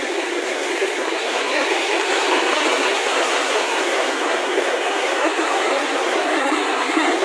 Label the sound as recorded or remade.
remade